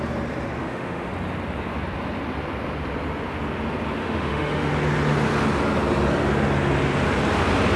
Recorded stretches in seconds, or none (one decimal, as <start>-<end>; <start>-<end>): 0.0-0.6; 1.1-4.0; 4.7-7.8